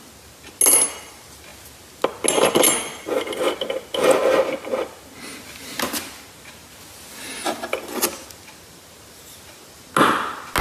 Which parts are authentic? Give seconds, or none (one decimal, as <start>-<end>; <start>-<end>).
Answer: 0.0-10.6